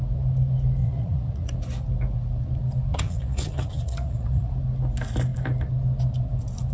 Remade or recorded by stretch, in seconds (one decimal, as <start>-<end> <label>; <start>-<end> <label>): 0.0-0.8 recorded; 0.8-1.5 remade; 1.5-2.9 recorded; 2.9-4.5 remade; 4.5-6.7 recorded